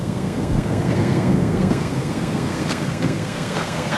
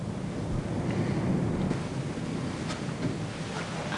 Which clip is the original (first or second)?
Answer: second